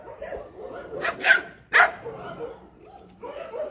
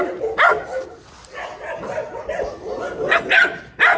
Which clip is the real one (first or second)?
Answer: second